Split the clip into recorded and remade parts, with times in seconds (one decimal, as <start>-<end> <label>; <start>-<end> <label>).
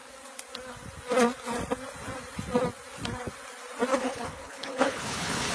0.0-3.9 recorded; 3.9-5.5 remade